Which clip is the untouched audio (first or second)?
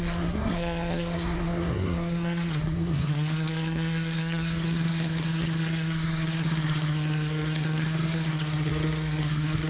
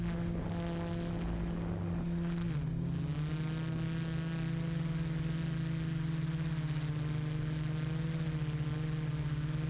second